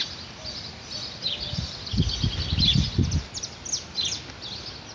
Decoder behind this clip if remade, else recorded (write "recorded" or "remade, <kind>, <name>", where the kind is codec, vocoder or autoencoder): recorded